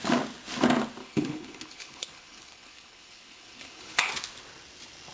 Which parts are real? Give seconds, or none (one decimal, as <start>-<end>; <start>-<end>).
0.0-1.0; 4.1-5.1